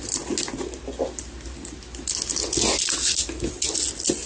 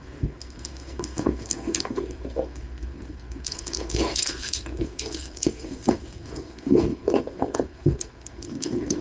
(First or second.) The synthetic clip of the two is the second